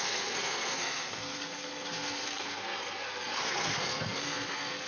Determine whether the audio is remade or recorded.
remade